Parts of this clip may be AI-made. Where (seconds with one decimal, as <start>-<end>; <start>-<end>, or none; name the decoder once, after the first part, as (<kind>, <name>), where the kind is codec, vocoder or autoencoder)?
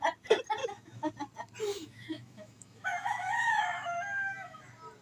0.6-1.1 (autoencoder, DAC-VAE); 1.7-4.6